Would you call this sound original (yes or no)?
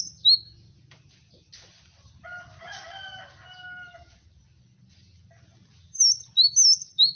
yes